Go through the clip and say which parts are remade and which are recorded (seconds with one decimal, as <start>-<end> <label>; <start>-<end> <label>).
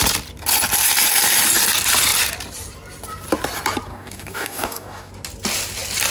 0.0-3.9 recorded; 3.9-5.1 remade; 5.1-6.1 recorded